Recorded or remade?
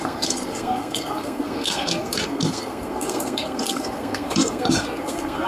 remade